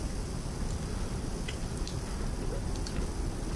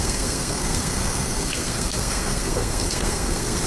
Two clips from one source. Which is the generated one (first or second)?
second